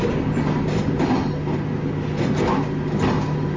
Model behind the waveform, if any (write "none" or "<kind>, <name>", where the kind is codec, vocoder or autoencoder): none